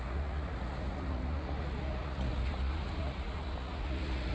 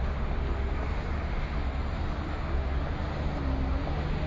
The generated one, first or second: first